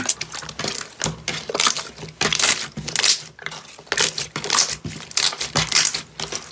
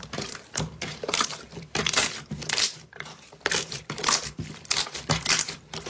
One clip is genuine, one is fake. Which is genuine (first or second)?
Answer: first